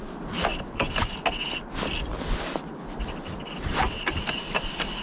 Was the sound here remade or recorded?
recorded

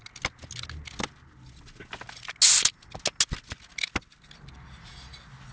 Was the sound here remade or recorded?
recorded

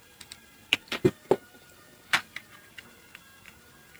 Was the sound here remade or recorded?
remade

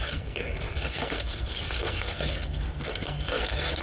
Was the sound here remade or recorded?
remade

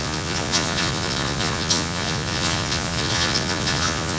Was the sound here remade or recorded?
remade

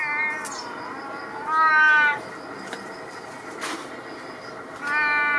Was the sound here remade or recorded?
recorded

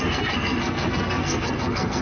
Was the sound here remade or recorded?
remade